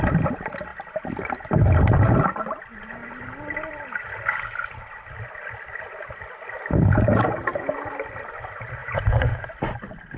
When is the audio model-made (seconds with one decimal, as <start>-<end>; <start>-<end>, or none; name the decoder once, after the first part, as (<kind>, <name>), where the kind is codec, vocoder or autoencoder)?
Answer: 8.8-9.5 (vocoder, Vocos)